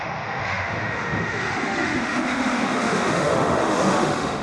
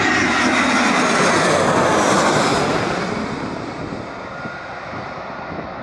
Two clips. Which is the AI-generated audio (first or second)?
first